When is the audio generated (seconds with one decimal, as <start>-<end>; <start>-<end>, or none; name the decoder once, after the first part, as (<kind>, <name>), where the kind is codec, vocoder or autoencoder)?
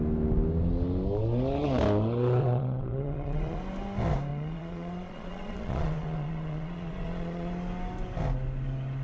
2.4-3.6 (vocoder, Vocos); 4.3-7.5